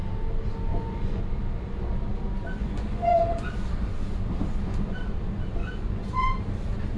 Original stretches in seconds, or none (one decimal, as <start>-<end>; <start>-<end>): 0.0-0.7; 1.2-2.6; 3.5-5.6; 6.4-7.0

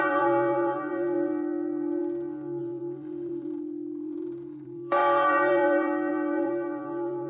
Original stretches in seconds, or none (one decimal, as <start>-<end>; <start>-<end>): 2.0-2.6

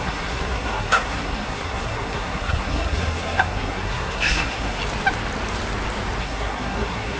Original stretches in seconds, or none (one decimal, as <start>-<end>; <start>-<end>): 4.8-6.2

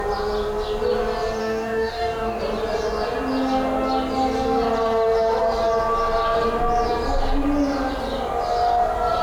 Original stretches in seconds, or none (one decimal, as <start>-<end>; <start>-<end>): 0.0-1.4; 2.4-9.2

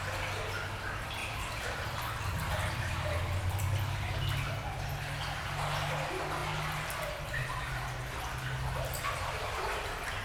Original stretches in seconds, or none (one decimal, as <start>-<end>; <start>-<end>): 0.0-1.2; 2.0-10.2